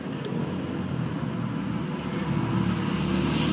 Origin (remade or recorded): recorded